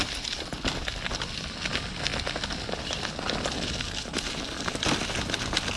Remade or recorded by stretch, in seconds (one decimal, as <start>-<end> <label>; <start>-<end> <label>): 0.0-5.8 recorded